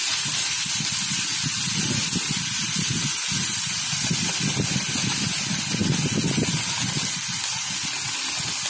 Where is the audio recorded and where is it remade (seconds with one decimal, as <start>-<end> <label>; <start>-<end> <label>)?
0.0-8.7 recorded